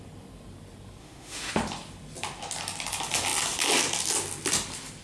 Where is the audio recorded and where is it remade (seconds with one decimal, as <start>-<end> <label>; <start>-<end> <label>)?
0.0-1.0 recorded; 1.0-1.5 remade; 1.5-5.0 recorded